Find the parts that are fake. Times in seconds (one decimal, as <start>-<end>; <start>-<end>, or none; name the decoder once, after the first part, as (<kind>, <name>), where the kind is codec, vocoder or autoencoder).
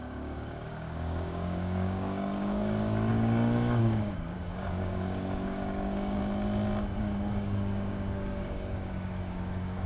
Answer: 0.0-6.2 (codec, DAC); 7.0-9.9